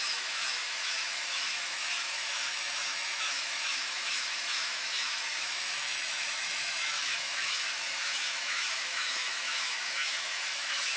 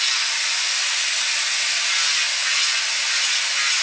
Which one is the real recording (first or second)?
second